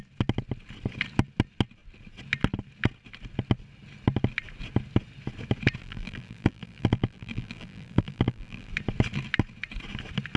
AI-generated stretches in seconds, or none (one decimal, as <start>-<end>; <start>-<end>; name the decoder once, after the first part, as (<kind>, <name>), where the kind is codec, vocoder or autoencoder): 5.8-8.7 (vocoder, BigVGAN v2)